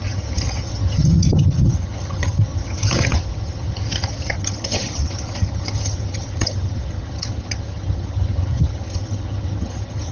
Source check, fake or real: fake